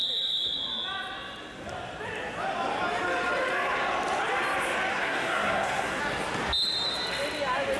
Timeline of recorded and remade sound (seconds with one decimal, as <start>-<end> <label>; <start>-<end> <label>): 0.0-4.9 recorded; 4.9-6.0 remade; 6.0-7.8 recorded

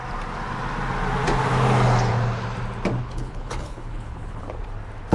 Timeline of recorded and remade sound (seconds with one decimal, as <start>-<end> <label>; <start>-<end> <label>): 0.0-3.0 recorded; 3.0-4.5 remade; 4.5-5.1 recorded